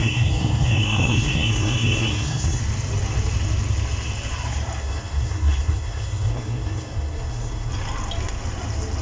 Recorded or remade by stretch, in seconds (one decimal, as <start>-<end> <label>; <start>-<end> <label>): 0.0-2.6 remade; 2.6-4.8 recorded; 4.8-7.7 remade; 7.7-9.0 recorded